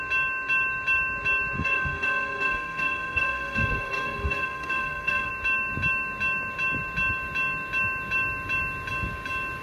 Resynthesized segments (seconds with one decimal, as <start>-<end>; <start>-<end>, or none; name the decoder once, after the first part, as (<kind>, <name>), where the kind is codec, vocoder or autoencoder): 1.6-5.3 (codec, SNAC)